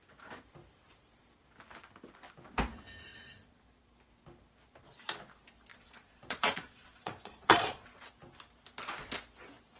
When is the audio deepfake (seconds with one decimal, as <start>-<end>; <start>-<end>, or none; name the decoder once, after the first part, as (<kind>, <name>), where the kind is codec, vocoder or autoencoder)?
3.1-3.6 (vocoder, Vocos); 5.7-8.1